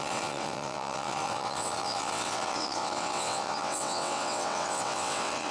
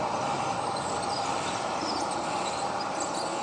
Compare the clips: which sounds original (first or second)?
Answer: second